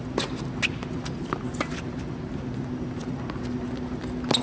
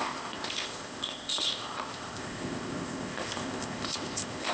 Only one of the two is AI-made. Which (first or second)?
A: second